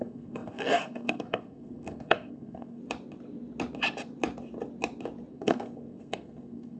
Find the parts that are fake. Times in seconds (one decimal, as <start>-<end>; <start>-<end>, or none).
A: 0.0-2.8; 5.3-6.8